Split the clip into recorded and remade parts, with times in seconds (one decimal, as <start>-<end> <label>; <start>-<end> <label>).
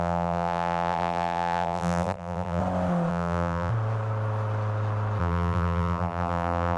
0.0-2.6 remade; 2.6-3.1 recorded; 3.1-3.7 remade; 3.7-5.2 recorded; 5.2-6.8 remade